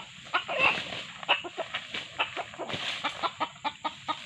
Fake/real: fake